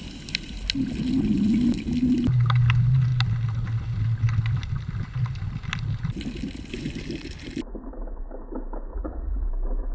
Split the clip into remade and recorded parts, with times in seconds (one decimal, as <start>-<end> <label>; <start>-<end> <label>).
0.0-8.9 recorded; 8.9-9.5 remade; 9.5-9.9 recorded